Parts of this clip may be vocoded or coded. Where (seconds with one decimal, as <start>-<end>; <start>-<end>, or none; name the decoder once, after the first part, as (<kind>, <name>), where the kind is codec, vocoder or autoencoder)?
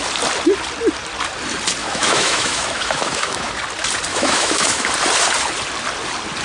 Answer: 1.8-3.5 (autoencoder, DAC-VAE); 4.1-4.9